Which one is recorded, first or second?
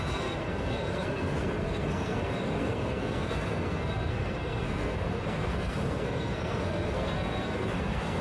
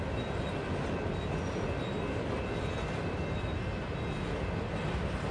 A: second